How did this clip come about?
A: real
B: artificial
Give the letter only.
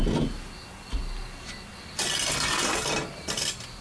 A